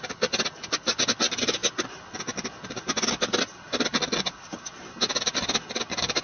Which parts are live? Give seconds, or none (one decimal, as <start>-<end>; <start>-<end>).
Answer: 0.0-6.2